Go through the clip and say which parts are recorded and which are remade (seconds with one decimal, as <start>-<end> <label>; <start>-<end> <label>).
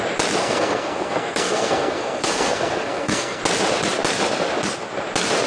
0.0-0.4 recorded; 0.4-3.4 remade; 3.4-5.5 recorded